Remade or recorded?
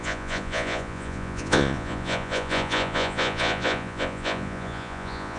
remade